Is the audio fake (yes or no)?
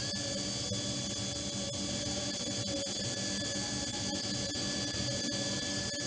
no